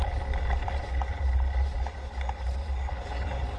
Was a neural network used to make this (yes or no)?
no